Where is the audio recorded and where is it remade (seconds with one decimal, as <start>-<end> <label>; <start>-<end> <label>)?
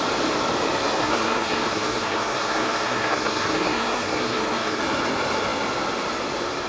0.0-1.0 recorded; 1.0-4.8 remade; 4.8-6.7 recorded